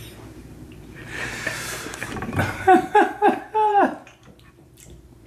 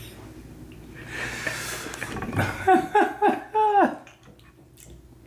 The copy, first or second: first